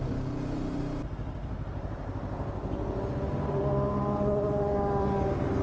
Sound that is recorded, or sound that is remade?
recorded